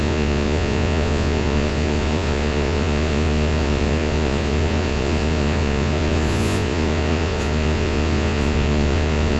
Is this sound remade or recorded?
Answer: remade